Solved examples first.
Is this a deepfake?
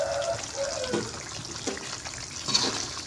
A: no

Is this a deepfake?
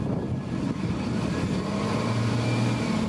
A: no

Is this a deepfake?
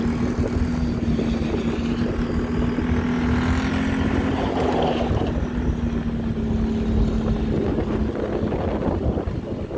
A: no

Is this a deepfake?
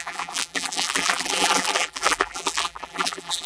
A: yes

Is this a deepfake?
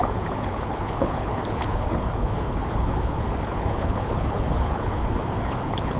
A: yes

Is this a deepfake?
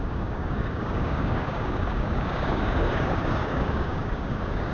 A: yes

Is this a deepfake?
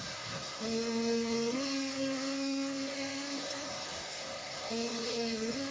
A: yes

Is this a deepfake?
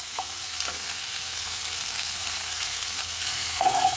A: yes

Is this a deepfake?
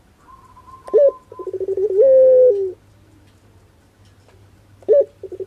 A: no